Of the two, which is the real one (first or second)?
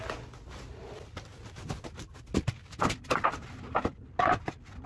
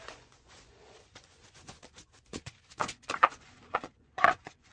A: first